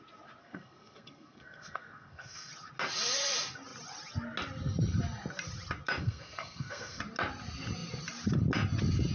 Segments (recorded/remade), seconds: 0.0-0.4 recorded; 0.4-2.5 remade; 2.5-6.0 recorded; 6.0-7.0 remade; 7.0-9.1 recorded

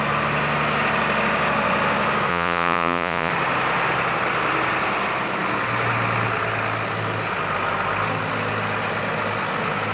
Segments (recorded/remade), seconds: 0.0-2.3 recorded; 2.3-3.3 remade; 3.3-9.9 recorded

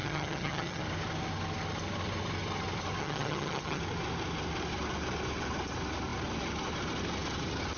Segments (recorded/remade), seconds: 0.0-0.8 remade; 0.8-3.0 recorded; 3.0-3.8 remade; 3.8-7.8 recorded

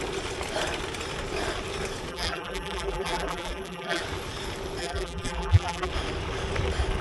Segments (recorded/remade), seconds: 0.0-2.1 recorded; 2.1-4.0 remade; 4.0-4.8 recorded; 4.8-5.9 remade; 5.9-7.0 recorded